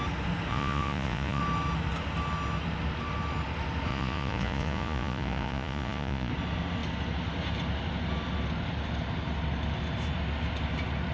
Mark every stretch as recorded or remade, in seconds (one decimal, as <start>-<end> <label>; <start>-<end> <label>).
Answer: 0.0-0.5 recorded; 0.5-1.4 remade; 1.4-3.9 recorded; 3.9-6.3 remade; 6.3-11.1 recorded